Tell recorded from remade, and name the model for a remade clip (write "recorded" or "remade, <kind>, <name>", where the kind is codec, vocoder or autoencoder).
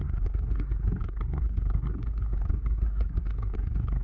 remade, codec, SNAC